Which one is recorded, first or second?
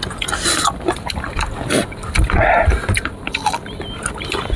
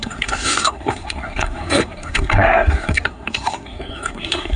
first